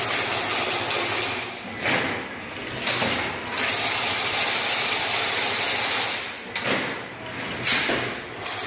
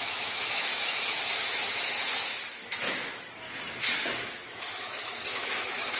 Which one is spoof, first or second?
second